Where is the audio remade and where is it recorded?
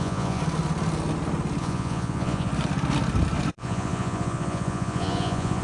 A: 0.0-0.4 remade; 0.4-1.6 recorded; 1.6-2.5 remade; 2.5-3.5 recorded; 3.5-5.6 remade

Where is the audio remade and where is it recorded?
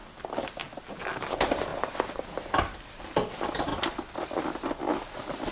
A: 0.0-5.5 recorded